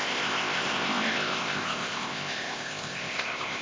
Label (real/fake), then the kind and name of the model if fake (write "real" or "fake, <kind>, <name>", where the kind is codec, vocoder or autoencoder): fake, codec, ZipCodec